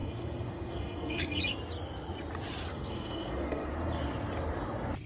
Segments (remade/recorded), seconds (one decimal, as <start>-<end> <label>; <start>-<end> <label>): 0.0-1.4 remade; 1.4-2.7 recorded; 2.7-3.7 remade; 3.7-5.1 recorded

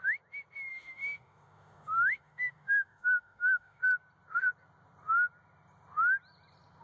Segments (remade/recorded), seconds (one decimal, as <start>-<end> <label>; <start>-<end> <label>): 0.0-0.7 recorded; 0.7-3.8 remade; 3.8-6.8 recorded

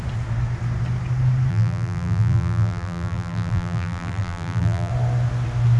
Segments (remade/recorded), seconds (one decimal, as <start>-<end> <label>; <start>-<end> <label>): 0.0-1.5 recorded; 1.5-4.9 remade; 4.9-5.8 recorded

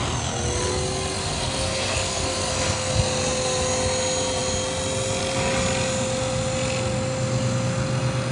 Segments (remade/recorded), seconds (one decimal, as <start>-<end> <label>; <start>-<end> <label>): 0.0-1.2 recorded; 1.2-2.9 remade; 2.9-8.3 recorded

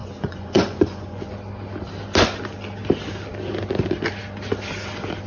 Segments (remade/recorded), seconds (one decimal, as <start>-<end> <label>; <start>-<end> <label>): 0.0-1.3 remade; 1.3-5.3 recorded